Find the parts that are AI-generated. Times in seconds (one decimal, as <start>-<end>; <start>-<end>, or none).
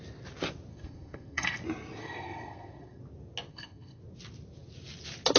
0.7-1.6; 2.0-3.0; 3.5-4.0